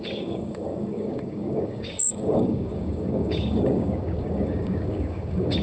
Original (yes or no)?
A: no